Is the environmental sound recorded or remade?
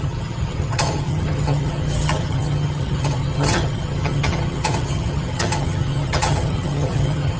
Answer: remade